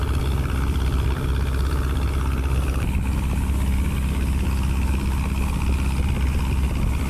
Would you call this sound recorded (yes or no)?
yes